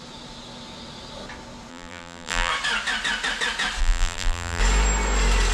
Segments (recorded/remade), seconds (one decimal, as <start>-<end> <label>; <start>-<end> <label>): 0.0-1.7 recorded; 1.7-2.5 remade; 2.5-3.8 recorded; 3.8-4.6 remade; 4.6-5.5 recorded